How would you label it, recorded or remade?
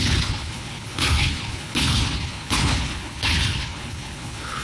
remade